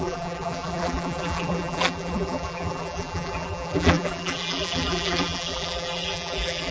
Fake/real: fake